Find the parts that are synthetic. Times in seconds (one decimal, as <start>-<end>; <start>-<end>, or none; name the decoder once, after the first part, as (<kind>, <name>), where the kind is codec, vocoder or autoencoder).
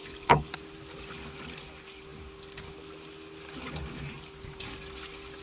0.0-0.5 (codec, HILCodec)